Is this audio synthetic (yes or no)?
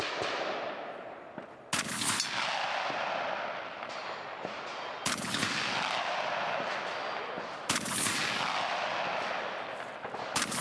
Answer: no